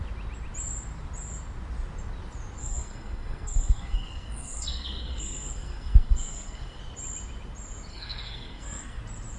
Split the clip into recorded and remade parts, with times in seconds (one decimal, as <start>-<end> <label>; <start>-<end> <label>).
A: 0.0-2.6 recorded; 2.6-6.8 remade; 6.8-7.9 recorded; 7.9-9.0 remade; 9.0-9.4 recorded